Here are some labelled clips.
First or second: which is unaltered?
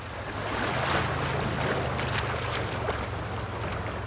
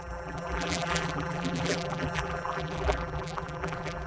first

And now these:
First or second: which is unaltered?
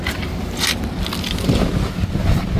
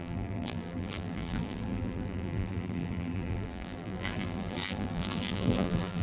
first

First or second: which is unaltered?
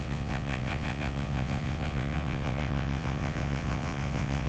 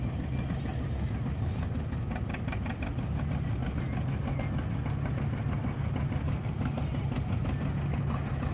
second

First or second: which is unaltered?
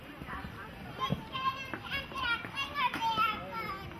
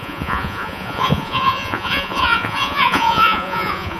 first